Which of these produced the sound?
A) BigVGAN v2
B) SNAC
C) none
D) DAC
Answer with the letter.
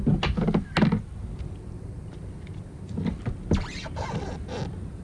C